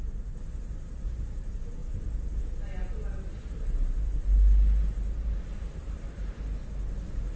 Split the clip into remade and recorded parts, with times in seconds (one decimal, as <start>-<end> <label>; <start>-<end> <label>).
0.0-7.4 recorded